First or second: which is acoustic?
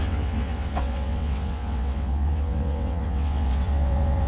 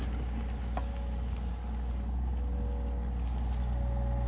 second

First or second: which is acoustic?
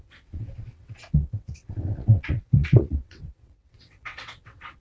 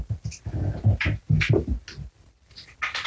second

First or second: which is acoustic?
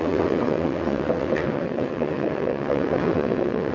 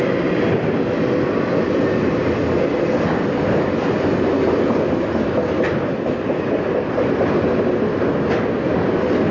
second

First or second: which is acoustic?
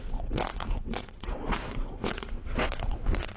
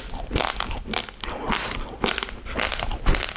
second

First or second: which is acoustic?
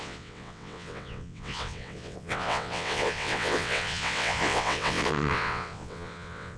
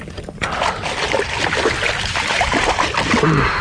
second